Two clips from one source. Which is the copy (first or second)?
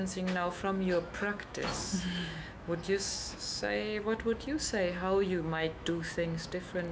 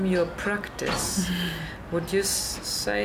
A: first